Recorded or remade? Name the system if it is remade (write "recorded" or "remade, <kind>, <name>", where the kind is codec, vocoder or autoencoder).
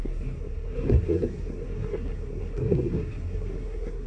remade, codec, SNAC